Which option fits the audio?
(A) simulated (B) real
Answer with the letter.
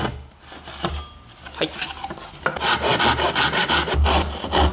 B